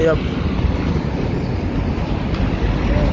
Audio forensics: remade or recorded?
recorded